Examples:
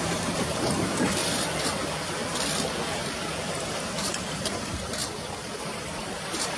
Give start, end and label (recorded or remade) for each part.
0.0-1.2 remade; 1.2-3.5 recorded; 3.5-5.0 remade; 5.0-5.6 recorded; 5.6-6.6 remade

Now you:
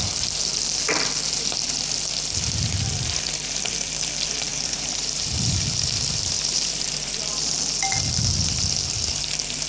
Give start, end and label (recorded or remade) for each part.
0.0-4.5 recorded; 4.5-7.2 remade; 7.2-9.7 recorded

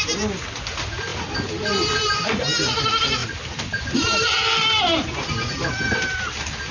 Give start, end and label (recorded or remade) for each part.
0.0-3.2 recorded; 3.2-5.1 remade; 5.1-6.7 recorded

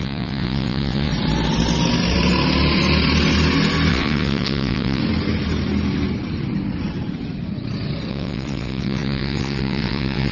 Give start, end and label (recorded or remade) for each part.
0.0-1.1 remade; 1.1-3.9 recorded; 3.9-5.0 remade; 5.0-8.1 recorded; 8.1-10.3 remade